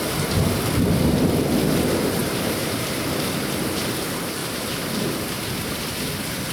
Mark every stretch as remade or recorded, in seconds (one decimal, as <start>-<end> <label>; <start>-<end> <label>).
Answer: 0.0-2.2 recorded; 2.2-2.9 remade; 2.9-4.4 recorded; 4.4-6.5 remade